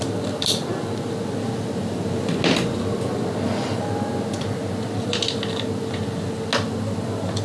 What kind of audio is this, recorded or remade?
recorded